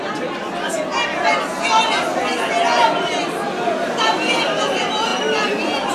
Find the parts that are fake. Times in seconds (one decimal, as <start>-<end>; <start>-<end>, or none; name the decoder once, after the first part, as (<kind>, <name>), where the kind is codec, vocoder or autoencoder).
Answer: none

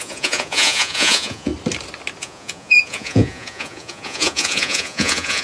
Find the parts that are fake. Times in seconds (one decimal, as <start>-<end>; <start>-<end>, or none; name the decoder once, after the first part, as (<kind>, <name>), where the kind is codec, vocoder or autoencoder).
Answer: 0.0-1.5 (vocoder, Vocos); 2.2-5.4